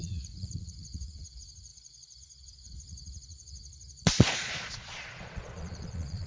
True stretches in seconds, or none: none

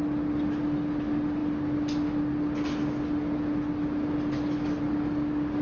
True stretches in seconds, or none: 0.0-5.6

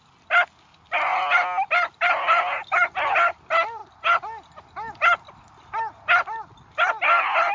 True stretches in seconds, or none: 0.0-7.5

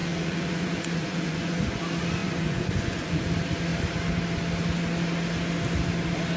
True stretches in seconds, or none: 1.8-2.2; 3.3-6.4

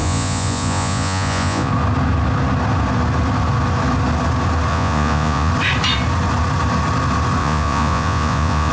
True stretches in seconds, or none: 1.7-4.7; 5.5-7.4